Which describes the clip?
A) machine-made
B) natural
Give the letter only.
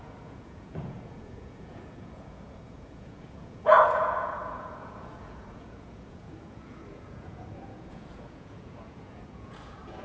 A